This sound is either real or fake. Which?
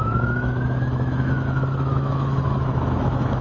fake